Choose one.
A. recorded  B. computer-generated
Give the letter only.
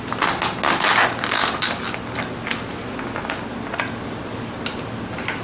A